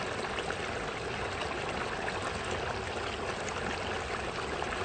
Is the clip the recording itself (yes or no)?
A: yes